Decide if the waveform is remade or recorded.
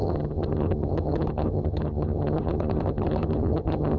remade